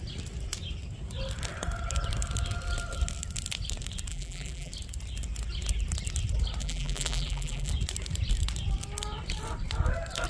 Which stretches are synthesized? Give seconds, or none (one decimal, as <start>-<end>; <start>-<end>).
4.1-4.7; 6.6-7.7